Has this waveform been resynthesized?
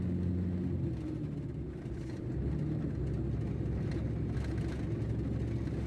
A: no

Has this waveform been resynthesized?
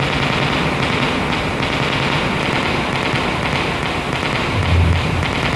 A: no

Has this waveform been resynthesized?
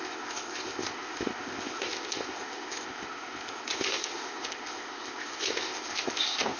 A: yes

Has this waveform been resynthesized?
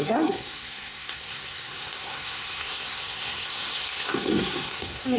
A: yes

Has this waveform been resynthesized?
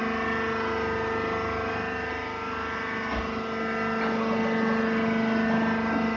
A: no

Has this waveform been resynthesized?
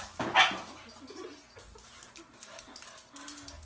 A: no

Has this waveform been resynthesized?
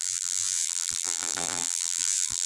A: yes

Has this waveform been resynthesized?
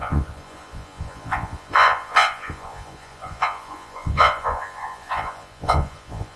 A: yes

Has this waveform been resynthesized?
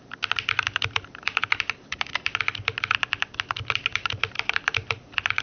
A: no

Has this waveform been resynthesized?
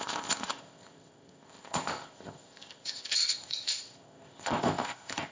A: yes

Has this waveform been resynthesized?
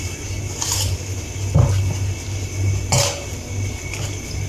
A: no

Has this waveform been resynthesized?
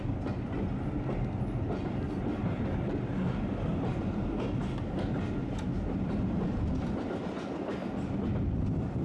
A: no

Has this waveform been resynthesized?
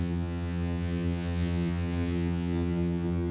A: yes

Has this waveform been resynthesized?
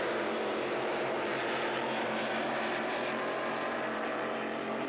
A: yes